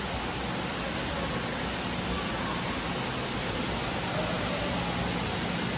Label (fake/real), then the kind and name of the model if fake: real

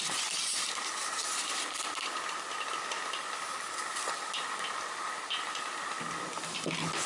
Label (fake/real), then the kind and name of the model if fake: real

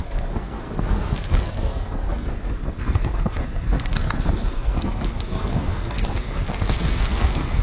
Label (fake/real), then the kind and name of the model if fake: fake, codec, SNAC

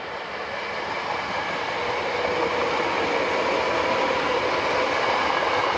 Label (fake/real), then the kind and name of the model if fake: real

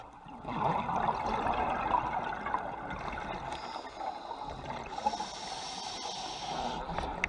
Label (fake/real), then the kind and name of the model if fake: real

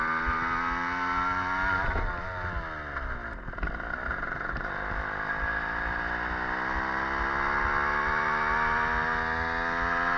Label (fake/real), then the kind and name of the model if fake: real